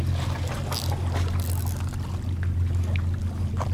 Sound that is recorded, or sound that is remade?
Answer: recorded